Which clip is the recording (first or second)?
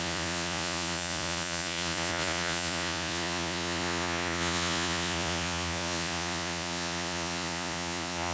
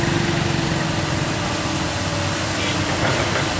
second